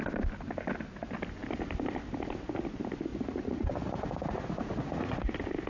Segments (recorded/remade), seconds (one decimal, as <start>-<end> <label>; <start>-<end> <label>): 0.0-3.1 recorded; 3.1-5.3 remade; 5.3-5.7 recorded